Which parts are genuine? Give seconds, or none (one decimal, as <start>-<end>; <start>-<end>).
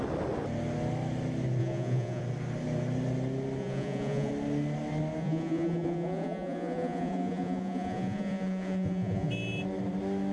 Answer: 0.0-1.6; 2.2-3.6; 4.3-5.2; 9.3-10.3